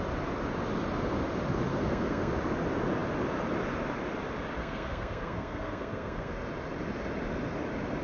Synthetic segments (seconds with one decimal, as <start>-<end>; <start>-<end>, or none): 1.7-2.3; 4.6-6.3